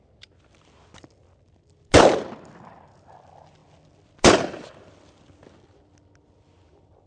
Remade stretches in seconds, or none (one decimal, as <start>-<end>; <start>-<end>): none